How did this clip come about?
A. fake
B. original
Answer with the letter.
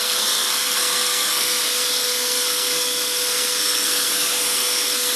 A